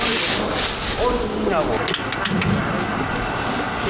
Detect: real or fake real